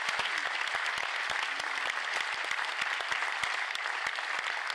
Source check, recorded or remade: recorded